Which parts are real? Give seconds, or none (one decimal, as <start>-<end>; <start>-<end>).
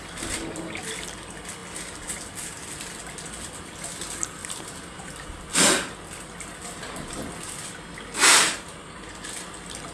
0.0-4.4; 5.1-8.2; 9.0-9.9